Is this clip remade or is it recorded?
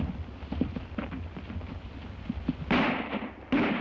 recorded